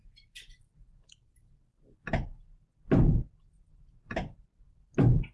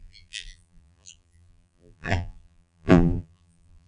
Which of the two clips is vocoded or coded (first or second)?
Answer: second